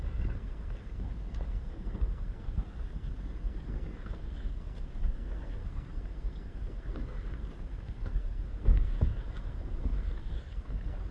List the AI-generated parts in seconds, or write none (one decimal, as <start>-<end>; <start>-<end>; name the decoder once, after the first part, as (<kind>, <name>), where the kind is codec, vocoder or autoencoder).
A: 0.0-11.1 (codec, SNAC)